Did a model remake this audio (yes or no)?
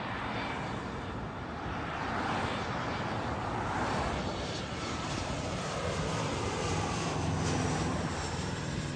yes